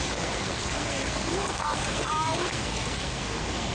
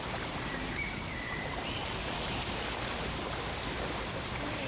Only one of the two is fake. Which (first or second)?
first